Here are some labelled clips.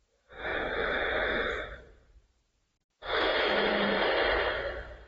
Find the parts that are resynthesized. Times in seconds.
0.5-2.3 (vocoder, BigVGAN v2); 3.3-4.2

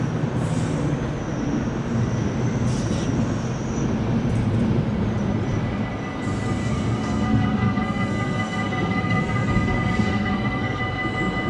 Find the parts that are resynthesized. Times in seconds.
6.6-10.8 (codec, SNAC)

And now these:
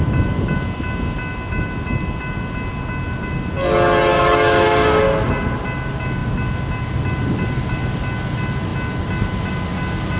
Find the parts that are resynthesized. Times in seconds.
4.1-5.0 (codec, DAC)

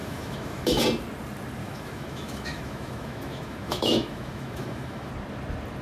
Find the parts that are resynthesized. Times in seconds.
0.0-0.8 (autoencoder, DAC-VAE); 1.6-5.1

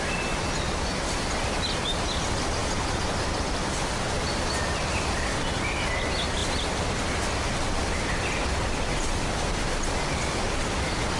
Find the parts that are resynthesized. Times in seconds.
none